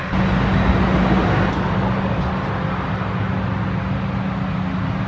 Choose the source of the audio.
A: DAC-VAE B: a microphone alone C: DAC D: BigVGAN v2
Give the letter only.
B